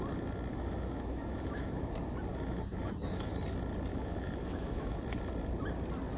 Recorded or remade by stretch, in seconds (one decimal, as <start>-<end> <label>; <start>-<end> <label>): 0.0-0.5 recorded; 0.5-1.9 remade; 1.9-2.3 recorded; 2.3-3.3 remade; 3.3-3.9 recorded; 3.9-5.0 remade; 5.0-6.2 recorded